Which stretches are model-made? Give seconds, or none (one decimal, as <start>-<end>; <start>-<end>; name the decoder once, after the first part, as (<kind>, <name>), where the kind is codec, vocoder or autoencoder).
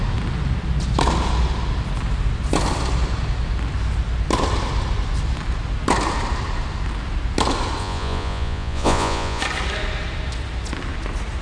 7.8-9.4 (vocoder, Vocos)